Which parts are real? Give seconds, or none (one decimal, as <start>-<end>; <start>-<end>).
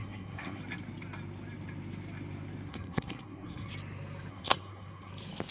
0.6-2.7; 3.7-4.3; 5.1-5.5